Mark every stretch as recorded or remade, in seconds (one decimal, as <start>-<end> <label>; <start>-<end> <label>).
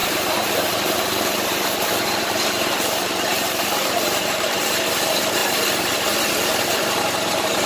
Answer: 0.0-4.6 remade; 4.6-7.7 recorded